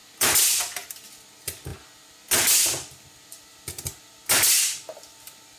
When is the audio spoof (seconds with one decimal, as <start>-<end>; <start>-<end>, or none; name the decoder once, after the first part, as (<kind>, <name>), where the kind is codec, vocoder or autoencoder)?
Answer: none